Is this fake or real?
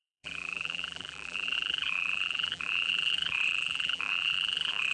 fake